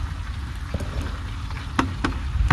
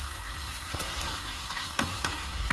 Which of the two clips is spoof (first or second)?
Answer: second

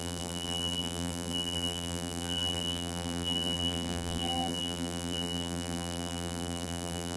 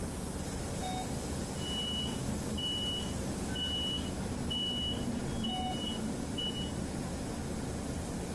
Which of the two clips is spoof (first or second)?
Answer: first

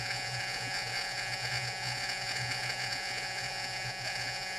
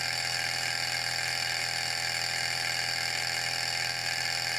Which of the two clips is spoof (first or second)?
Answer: first